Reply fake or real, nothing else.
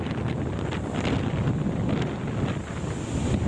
real